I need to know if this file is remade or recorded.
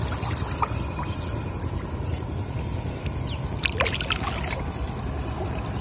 recorded